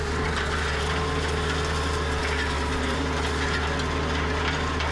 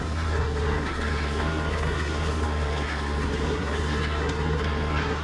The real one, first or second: first